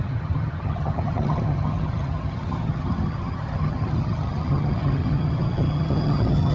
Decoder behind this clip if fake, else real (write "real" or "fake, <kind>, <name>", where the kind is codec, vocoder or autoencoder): fake, vocoder, HiFi-GAN